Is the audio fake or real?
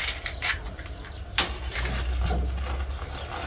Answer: real